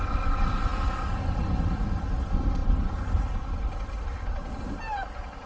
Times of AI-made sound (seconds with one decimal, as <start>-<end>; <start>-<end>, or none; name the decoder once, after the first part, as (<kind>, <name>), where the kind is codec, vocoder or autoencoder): none